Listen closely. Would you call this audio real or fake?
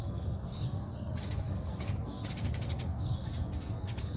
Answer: fake